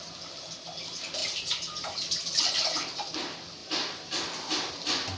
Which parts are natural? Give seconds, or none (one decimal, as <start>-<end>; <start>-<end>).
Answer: 0.0-5.2